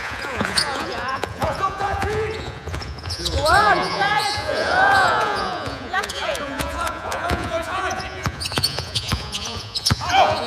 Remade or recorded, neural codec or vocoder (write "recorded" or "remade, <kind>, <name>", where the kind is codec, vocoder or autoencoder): remade, vocoder, Vocos